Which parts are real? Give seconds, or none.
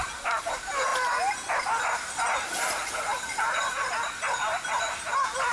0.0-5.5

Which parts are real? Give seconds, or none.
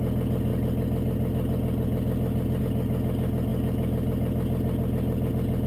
0.0-5.7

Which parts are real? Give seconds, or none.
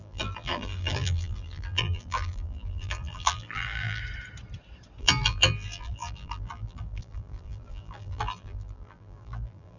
4.0-5.0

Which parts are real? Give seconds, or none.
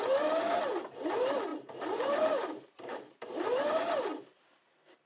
0.0-1.5; 3.7-5.1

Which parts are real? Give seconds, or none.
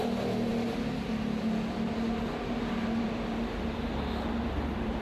0.5-3.0